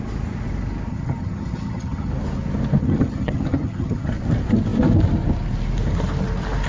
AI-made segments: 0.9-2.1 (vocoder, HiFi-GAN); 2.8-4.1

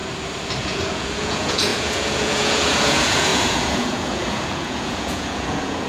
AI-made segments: 0.6-5.9 (vocoder, Vocos)

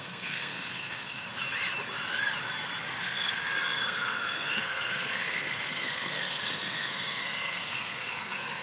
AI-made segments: 0.0-1.3 (codec, SNAC); 3.0-8.6

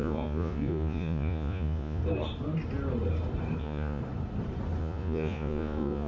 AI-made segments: 0.0-2.0 (vocoder, Vocos); 3.6-4.0; 4.8-6.1

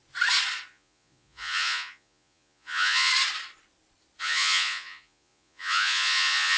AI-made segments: 0.7-3.1 (vocoder, Vocos); 4.2-6.6

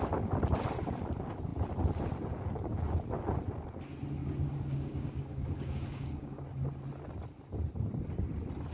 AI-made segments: 4.2-6.4 (codec, DAC)

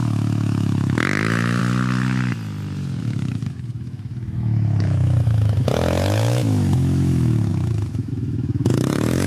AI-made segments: 0.0-1.6 (autoencoder, DAC-VAE); 3.0-9.3

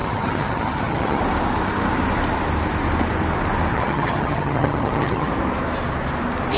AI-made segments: 0.0-1.2 (vocoder, HiFi-GAN); 3.7-5.3